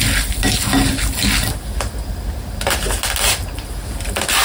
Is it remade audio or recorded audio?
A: recorded